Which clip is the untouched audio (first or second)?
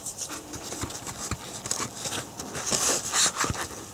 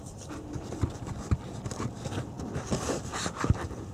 first